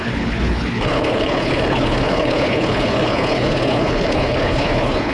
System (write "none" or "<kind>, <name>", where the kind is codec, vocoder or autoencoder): codec, HILCodec